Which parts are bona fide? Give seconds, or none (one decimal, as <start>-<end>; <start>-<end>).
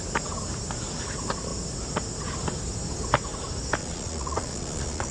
0.0-3.8